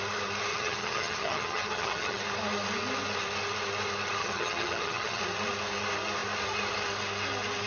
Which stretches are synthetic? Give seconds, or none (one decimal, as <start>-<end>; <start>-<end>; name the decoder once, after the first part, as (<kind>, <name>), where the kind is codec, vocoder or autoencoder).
0.5-2.2 (vocoder, HiFi-GAN); 4.2-5.2